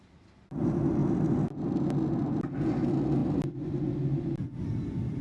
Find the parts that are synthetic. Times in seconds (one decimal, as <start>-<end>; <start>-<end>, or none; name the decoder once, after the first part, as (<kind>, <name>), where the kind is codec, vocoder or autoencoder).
none